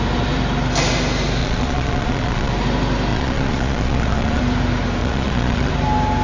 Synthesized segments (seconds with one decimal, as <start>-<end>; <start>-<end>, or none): 1.4-2.5; 3.1-4.4; 5.0-5.7